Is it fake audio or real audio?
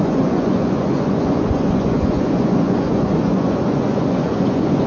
fake